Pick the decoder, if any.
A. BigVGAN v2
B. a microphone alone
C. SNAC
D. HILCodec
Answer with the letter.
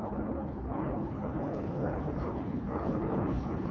D